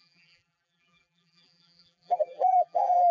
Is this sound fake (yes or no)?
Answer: yes